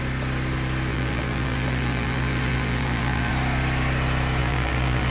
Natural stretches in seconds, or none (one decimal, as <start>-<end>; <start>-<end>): 0.0-0.9; 3.3-4.4